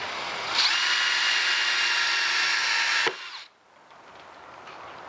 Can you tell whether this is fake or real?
real